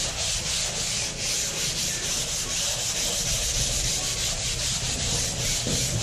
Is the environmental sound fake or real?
real